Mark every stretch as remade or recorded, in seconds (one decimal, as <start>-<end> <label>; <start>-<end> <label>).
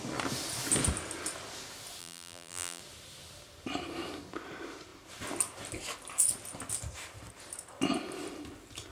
0.0-2.0 recorded; 2.0-2.8 remade; 2.8-8.9 recorded